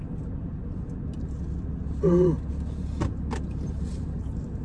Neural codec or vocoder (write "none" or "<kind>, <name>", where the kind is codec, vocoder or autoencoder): none